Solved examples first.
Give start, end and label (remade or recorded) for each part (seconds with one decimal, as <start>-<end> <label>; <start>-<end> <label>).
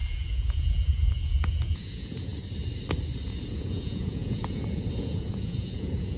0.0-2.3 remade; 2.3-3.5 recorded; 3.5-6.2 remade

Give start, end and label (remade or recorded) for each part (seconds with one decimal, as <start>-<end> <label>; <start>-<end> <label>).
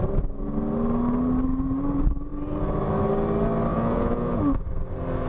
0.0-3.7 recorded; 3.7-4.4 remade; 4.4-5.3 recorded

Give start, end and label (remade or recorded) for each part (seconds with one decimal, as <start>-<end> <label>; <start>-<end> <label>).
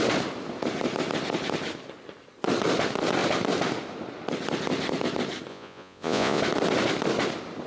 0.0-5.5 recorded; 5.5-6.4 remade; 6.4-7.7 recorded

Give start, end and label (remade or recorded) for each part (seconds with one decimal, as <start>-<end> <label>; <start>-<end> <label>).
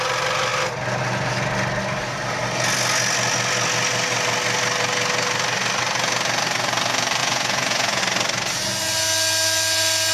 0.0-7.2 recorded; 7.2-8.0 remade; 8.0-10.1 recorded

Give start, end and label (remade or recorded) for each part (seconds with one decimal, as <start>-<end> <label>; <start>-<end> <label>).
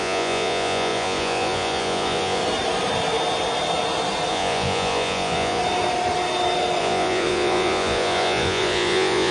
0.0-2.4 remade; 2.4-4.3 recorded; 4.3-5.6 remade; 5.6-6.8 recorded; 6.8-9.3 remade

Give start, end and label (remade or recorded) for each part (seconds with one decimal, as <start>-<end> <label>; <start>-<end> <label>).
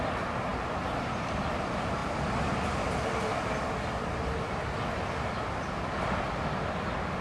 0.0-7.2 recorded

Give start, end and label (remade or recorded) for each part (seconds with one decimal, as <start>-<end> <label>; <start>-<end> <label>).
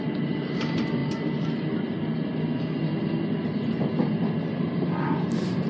0.0-5.7 recorded